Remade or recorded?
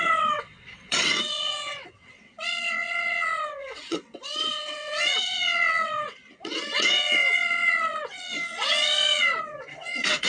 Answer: remade